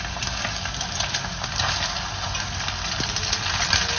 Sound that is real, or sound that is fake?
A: real